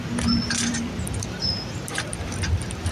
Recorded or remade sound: recorded